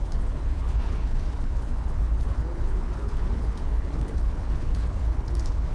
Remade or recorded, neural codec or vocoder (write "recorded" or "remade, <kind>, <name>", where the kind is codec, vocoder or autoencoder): remade, codec, HILCodec